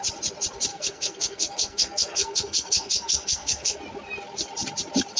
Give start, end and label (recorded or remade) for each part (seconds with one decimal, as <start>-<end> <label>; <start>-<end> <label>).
0.0-0.7 recorded; 0.7-3.8 remade; 3.8-5.2 recorded